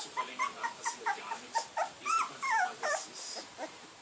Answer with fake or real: fake